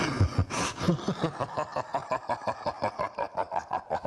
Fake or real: real